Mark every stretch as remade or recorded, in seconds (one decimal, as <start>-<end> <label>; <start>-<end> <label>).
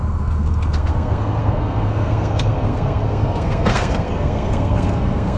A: 0.0-5.4 remade